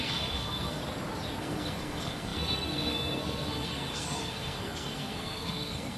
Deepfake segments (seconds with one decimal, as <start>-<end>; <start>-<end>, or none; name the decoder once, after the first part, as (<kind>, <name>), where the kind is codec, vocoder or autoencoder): 0.0-0.8 (codec, SNAC); 1.4-6.0